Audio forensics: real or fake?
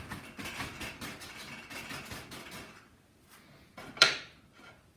real